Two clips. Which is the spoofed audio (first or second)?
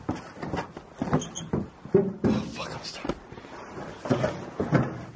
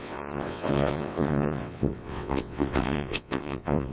second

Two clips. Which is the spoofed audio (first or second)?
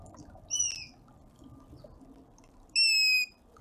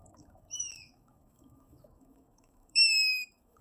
second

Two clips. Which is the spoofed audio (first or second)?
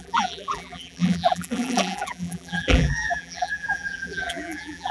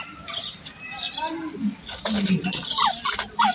first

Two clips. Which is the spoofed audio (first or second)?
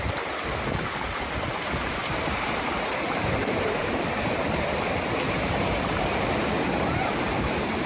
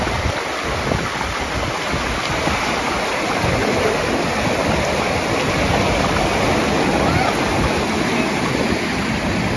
first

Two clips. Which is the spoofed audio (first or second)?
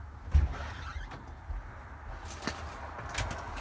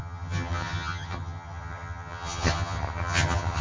second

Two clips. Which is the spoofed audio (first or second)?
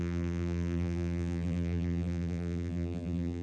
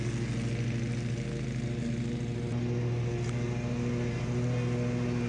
first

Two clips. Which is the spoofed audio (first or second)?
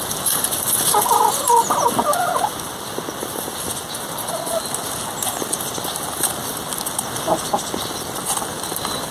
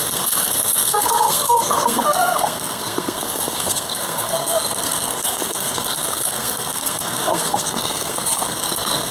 second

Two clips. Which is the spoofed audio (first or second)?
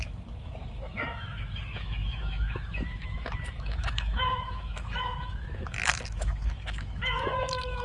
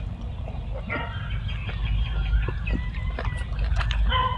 first